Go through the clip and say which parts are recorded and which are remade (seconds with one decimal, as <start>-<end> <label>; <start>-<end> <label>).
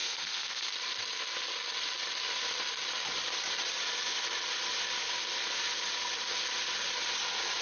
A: 0.0-0.7 remade; 0.7-7.6 recorded